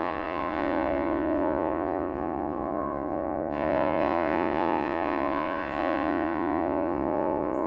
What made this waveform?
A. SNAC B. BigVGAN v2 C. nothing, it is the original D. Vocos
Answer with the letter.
D